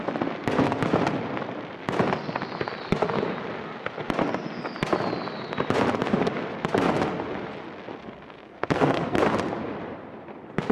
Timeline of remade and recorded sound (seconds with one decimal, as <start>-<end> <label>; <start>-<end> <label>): 0.0-8.0 recorded; 8.0-9.2 remade; 9.2-10.7 recorded